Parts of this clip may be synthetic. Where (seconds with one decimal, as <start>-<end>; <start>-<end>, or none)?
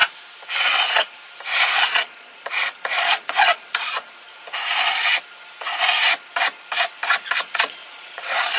1.7-4.3; 7.4-8.6